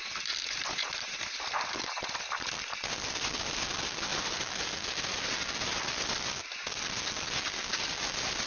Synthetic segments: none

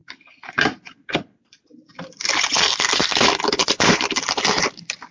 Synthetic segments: 0.0-3.1 (vocoder, BigVGAN v2); 3.6-4.1

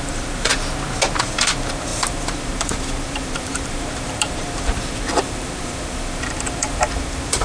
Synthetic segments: 0.0-0.5 (vocoder, BigVGAN v2); 1.2-7.4